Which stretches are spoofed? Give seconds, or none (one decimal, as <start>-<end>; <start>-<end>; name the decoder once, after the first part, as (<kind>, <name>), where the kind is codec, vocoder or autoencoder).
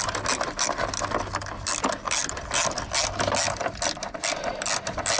none